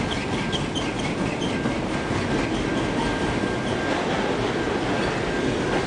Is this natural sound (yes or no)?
yes